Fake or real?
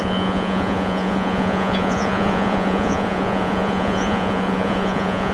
fake